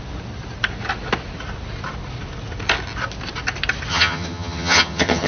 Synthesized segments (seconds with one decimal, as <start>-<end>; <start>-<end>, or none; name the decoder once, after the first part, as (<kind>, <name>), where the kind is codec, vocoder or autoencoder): 3.9-5.3 (vocoder, HiFi-GAN)